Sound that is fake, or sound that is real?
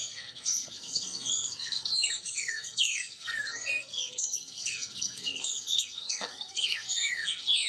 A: fake